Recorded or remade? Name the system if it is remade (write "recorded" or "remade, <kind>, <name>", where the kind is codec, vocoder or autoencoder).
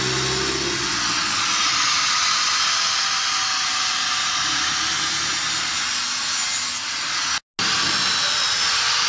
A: recorded